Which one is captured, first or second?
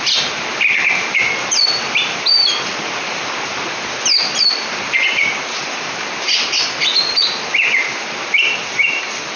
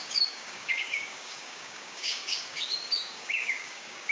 first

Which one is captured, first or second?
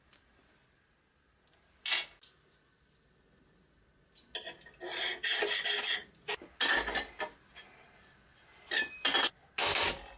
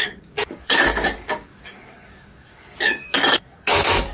first